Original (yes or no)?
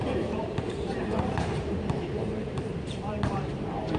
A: no